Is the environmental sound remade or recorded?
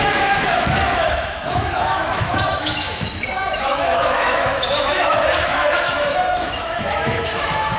remade